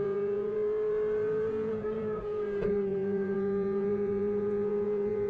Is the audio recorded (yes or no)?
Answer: no